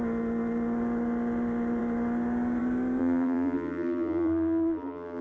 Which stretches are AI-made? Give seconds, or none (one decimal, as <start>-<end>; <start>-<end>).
3.0-5.2